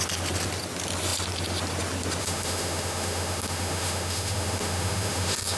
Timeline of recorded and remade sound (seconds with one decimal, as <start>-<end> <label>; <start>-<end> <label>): 0.0-2.2 recorded; 2.2-5.6 remade